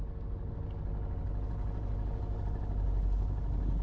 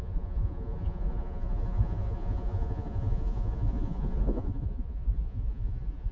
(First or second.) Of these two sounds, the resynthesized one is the second